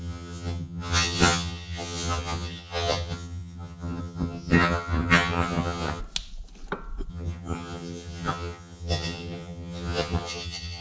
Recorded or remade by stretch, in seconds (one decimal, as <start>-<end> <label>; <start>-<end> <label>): 0.0-6.0 remade; 6.0-7.1 recorded; 7.1-10.8 remade